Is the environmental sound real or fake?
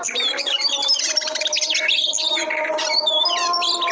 real